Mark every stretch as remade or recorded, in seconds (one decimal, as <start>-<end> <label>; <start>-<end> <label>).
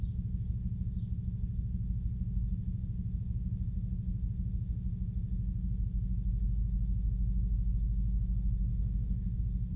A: 0.0-8.7 recorded; 8.7-9.4 remade; 9.4-9.8 recorded